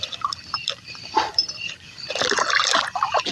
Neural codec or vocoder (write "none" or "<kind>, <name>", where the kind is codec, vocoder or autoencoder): none